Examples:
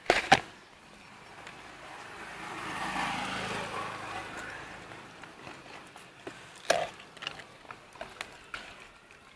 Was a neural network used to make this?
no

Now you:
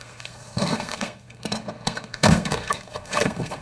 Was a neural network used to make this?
yes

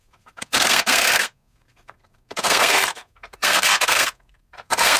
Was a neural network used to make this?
yes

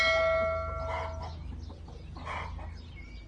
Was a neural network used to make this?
no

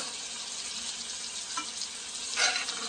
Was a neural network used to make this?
no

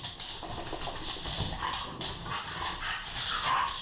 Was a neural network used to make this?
no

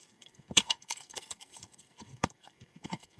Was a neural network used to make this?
yes